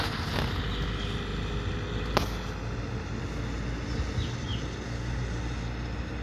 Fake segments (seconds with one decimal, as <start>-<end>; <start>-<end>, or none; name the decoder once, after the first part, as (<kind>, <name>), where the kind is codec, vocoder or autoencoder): 4.5-5.4 (vocoder, BigVGAN v2)